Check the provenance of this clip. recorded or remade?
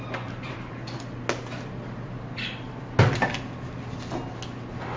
recorded